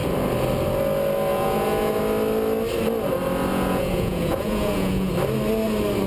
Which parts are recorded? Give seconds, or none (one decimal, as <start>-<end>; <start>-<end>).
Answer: 0.0-1.3; 2.0-3.5; 5.1-6.1